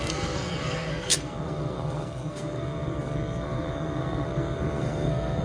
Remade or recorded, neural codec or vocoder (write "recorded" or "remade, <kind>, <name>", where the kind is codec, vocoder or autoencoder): remade, codec, SNAC